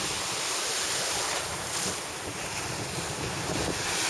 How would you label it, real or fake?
real